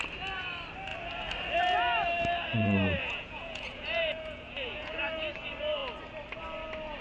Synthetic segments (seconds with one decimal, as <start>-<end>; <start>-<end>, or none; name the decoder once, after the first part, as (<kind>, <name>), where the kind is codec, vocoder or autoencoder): 2.5-4.9 (vocoder, Vocos)